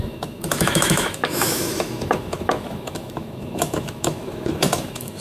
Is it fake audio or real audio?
fake